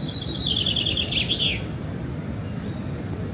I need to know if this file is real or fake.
real